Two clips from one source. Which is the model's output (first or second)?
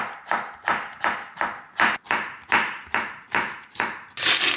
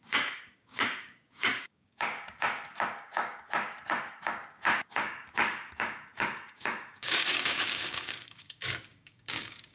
second